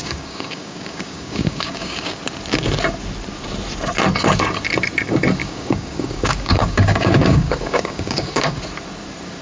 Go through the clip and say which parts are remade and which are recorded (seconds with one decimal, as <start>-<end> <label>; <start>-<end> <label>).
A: 0.0-2.2 remade; 2.2-5.4 recorded; 5.4-8.6 remade; 8.6-9.4 recorded